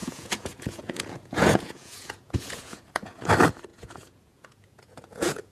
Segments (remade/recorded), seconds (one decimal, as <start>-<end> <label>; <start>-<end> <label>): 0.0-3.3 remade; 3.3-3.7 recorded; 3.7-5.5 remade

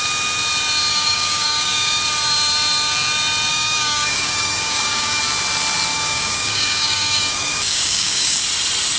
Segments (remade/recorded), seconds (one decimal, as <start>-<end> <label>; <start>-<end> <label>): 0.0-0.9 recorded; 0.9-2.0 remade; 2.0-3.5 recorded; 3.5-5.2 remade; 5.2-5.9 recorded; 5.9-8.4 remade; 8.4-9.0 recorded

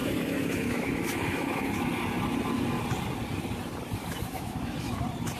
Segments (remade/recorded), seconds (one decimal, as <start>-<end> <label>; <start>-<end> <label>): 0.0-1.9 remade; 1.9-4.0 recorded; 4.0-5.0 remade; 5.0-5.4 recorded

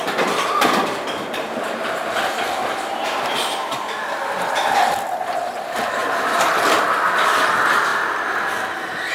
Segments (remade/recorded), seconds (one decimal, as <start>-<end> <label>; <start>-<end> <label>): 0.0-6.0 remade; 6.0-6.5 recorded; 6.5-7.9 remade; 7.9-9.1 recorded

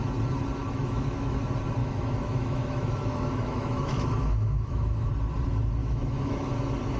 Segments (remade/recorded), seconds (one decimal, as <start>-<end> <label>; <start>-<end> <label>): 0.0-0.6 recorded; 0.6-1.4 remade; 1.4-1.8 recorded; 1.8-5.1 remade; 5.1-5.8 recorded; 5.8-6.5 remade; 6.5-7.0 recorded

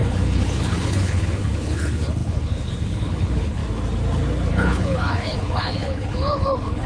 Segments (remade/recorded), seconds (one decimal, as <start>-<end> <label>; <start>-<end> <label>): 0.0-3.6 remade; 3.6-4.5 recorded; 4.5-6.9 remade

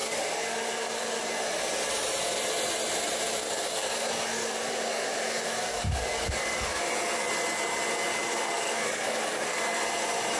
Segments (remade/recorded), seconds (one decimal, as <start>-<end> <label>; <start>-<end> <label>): 0.0-1.2 remade; 1.2-3.4 recorded; 3.4-6.8 remade; 6.8-8.1 recorded; 8.1-9.6 remade; 9.6-10.4 recorded

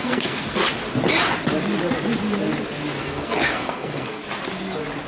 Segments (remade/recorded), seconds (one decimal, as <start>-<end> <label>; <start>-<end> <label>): 0.0-0.6 remade; 0.6-3.0 recorded; 3.0-4.2 remade; 4.2-5.1 recorded